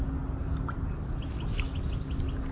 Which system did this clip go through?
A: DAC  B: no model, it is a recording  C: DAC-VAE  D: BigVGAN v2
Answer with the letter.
B